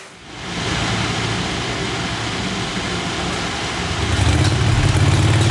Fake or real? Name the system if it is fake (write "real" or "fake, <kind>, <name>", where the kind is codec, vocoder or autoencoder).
real